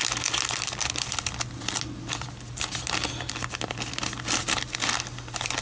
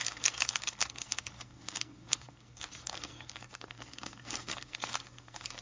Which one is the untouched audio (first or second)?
first